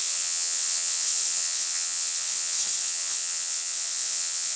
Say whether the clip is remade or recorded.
remade